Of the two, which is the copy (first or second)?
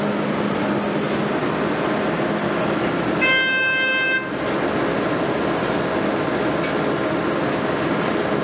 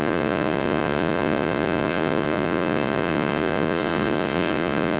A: second